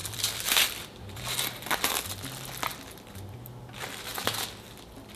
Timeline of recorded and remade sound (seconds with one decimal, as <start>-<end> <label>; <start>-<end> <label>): 0.0-1.4 remade; 1.4-2.7 recorded; 2.7-3.4 remade; 3.4-4.1 recorded; 4.1-5.2 remade

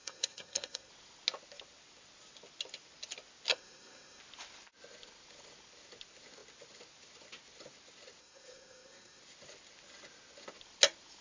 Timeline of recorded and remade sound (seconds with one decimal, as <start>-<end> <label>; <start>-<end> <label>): 0.0-0.9 remade; 0.9-3.5 recorded; 3.5-4.2 remade; 4.2-8.2 recorded; 8.2-9.2 remade; 9.2-11.2 recorded